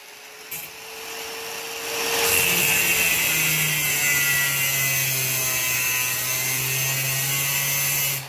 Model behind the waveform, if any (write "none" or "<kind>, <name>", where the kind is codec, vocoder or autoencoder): none